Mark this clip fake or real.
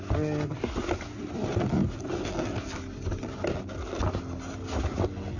real